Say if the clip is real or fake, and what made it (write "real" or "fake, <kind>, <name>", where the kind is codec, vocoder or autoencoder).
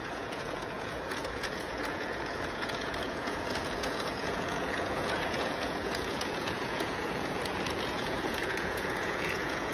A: fake, vocoder, Vocos